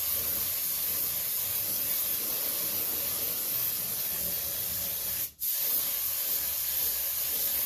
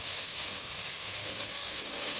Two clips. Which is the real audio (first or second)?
first